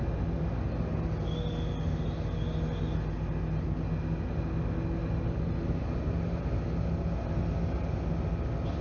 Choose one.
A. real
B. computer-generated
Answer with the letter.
A